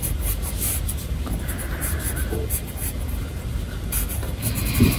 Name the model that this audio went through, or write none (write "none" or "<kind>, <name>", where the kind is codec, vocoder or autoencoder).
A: none